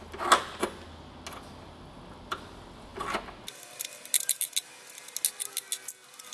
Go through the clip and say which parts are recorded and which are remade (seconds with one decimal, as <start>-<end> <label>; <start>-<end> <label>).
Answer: 0.0-6.3 recorded